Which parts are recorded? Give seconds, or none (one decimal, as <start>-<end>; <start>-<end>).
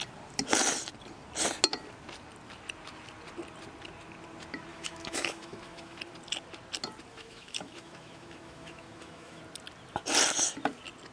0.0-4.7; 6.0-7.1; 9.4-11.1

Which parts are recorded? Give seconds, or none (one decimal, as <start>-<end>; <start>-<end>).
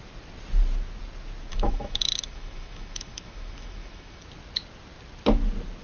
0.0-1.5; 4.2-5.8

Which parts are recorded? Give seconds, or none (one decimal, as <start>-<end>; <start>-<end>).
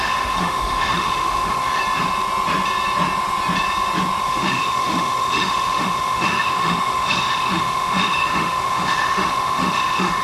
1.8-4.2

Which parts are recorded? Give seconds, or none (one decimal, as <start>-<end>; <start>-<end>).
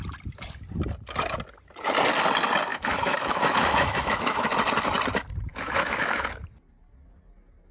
0.0-2.7; 4.5-5.5; 6.3-7.7